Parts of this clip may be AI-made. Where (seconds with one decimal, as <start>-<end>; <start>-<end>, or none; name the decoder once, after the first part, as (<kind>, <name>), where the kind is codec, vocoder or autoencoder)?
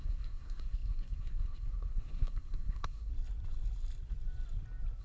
0.0-3.1 (codec, SNAC)